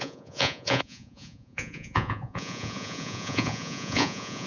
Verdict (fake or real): fake